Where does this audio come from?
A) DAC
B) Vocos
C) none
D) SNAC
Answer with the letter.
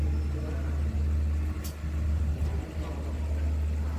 C